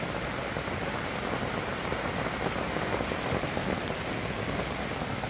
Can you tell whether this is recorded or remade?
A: recorded